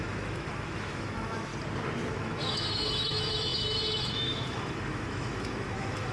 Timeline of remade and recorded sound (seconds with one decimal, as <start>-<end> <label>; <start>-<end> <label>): 0.0-1.5 remade; 1.5-2.1 recorded; 2.1-6.1 remade